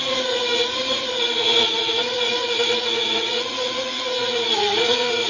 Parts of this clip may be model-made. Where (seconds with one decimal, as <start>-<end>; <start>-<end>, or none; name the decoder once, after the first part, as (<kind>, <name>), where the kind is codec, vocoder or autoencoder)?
0.0-5.3 (vocoder, Vocos)